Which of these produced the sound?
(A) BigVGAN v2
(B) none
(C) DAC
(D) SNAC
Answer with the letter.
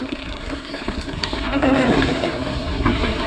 D